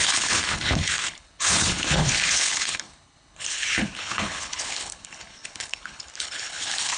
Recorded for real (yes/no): no